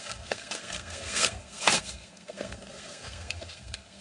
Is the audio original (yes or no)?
no